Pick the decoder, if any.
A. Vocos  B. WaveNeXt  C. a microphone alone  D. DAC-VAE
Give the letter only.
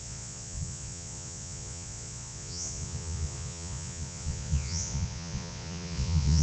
A